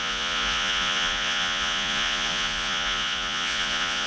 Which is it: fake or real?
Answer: fake